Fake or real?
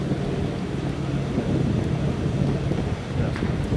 real